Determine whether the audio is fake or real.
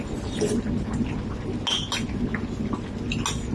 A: real